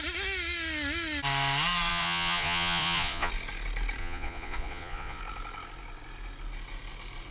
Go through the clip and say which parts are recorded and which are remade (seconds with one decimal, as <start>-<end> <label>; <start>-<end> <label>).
0.0-1.9 recorded; 1.9-3.3 remade; 3.3-4.0 recorded; 4.0-5.2 remade; 5.2-7.3 recorded